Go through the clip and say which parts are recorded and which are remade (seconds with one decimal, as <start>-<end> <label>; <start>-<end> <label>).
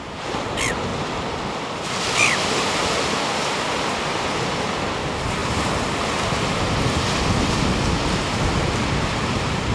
0.0-9.7 recorded